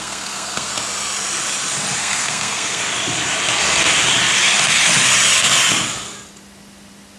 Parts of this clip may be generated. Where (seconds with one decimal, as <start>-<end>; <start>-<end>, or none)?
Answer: 0.0-0.7; 2.0-2.8